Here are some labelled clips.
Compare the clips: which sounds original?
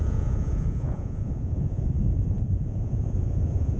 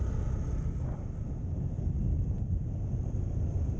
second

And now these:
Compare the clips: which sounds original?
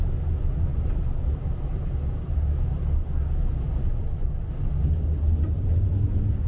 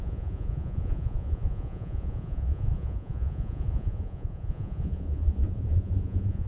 first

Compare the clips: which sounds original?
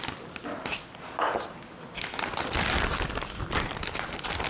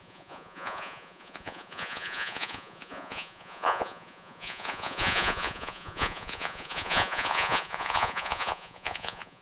first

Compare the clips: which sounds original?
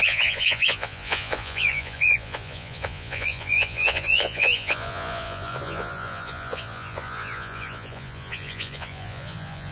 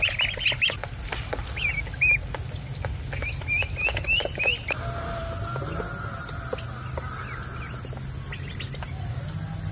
second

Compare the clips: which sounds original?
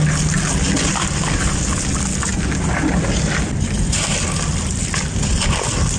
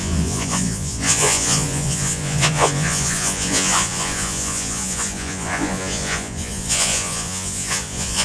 first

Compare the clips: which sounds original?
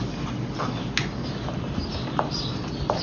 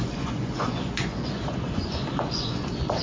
first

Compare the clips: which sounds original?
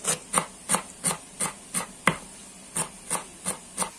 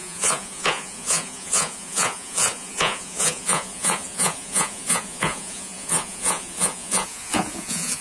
first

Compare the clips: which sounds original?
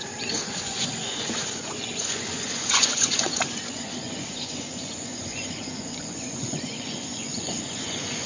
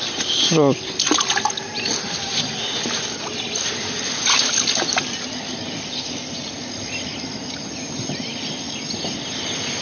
second